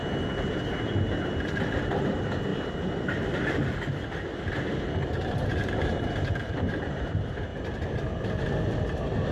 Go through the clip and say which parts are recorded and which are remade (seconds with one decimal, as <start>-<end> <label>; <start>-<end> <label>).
0.0-1.8 recorded; 1.8-2.5 remade; 2.5-5.0 recorded; 5.0-7.5 remade; 7.5-9.3 recorded